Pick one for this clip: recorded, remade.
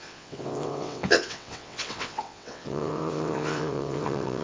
remade